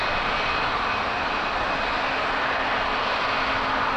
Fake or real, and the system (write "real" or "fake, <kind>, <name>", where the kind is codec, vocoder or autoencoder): real